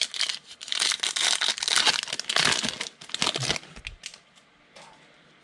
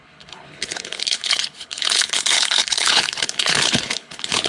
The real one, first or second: first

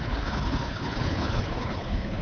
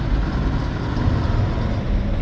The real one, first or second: second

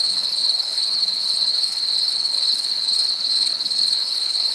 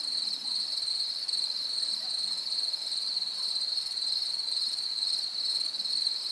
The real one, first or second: second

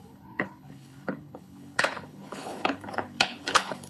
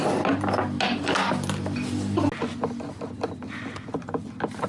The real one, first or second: second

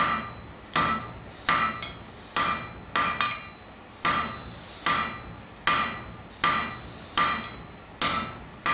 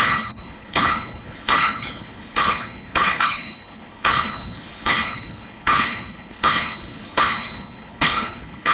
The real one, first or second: first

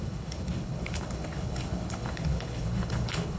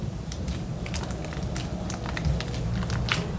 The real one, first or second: second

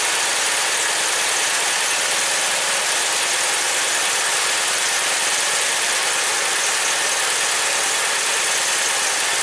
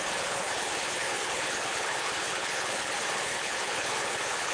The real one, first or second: first